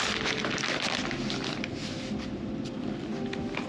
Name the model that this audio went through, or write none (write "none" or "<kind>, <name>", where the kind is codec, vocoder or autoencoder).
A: none